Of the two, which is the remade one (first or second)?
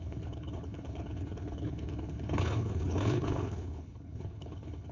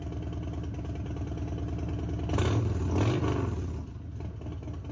first